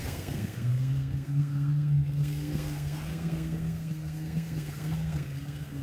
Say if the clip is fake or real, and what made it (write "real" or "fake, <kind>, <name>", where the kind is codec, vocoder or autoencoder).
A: fake, codec, SNAC